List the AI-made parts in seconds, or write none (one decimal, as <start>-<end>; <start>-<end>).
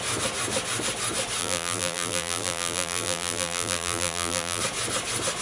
1.4-4.6